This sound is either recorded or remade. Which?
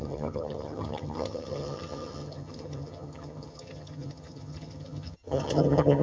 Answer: remade